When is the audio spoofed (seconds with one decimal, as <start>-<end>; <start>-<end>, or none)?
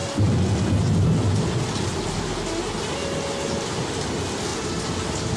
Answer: 4.5-5.4